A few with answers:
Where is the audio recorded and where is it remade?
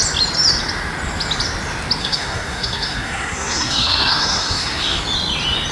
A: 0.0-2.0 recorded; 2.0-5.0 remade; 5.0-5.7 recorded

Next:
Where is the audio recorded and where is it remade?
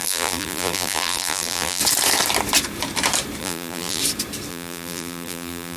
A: 0.0-1.8 remade; 1.8-3.4 recorded; 3.4-4.0 remade; 4.0-4.5 recorded; 4.5-5.8 remade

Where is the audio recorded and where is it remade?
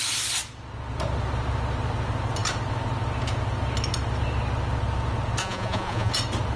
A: 0.0-5.4 recorded; 5.4-6.1 remade; 6.1-6.6 recorded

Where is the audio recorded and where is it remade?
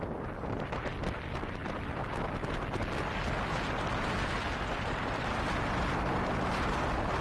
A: 0.0-7.2 recorded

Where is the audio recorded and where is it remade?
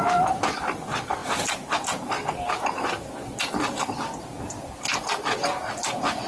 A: 0.0-6.3 recorded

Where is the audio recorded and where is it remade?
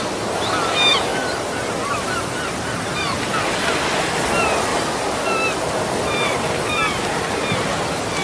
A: 0.0-1.1 recorded; 1.1-3.2 remade; 3.2-8.2 recorded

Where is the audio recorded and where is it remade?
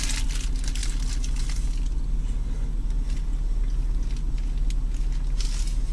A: 0.0-5.9 recorded